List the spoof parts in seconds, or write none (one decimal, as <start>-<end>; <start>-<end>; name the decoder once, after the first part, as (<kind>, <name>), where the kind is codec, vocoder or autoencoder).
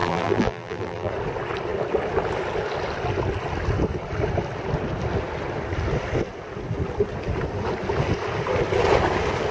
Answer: 0.0-1.1 (vocoder, BigVGAN v2)